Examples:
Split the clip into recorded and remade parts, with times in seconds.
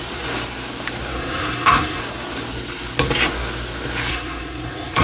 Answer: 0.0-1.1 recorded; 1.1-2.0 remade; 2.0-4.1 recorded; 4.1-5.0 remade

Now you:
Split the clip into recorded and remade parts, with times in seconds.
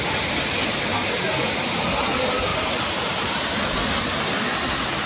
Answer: 0.0-2.5 recorded; 2.5-3.8 remade; 3.8-5.1 recorded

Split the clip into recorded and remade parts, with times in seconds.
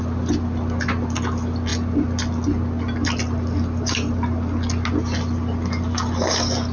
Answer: 0.0-6.7 recorded